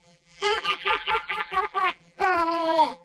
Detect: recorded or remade remade